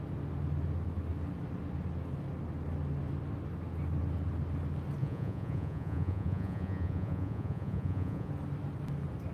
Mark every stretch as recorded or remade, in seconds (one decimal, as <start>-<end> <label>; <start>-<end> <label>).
0.0-5.0 recorded; 5.0-8.3 remade; 8.3-9.3 recorded